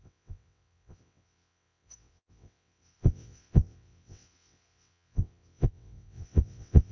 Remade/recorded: remade